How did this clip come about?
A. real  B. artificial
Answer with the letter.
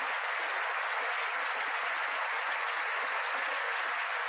B